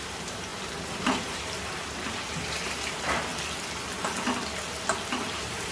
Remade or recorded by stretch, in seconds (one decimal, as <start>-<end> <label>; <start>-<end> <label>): 0.0-3.3 remade; 3.3-5.3 recorded; 5.3-5.7 remade